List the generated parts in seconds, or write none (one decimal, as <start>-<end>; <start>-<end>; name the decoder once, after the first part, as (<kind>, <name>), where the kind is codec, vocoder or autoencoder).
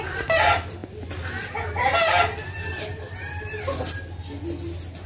none